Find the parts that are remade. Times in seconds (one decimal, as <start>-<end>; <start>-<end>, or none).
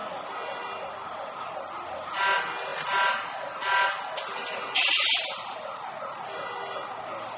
none